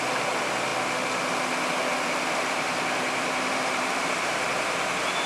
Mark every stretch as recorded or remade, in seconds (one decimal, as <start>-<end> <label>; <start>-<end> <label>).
0.0-1.9 recorded; 1.9-5.3 remade